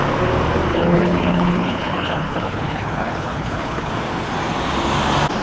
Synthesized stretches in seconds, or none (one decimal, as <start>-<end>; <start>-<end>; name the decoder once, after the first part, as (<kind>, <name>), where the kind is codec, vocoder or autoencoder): 0.7-3.9 (codec, HILCodec)

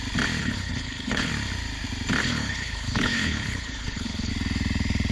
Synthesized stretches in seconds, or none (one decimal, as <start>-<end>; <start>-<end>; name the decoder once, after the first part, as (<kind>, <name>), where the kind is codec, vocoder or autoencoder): 0.4-1.3 (codec, HILCodec); 2.2-4.3

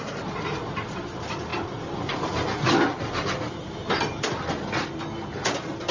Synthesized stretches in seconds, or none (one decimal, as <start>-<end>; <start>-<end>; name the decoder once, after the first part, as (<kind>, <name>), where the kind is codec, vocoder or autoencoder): none

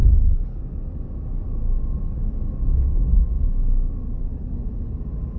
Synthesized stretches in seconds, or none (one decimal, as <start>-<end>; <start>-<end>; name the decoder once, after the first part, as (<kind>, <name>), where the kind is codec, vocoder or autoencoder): 0.0-0.6 (codec, HILCodec)

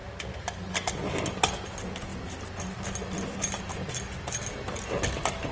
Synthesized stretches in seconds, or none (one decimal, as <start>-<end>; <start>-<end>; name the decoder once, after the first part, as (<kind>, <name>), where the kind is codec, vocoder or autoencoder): none